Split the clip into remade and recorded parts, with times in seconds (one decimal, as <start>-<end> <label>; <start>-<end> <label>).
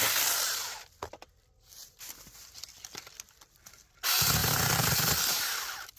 0.0-6.0 recorded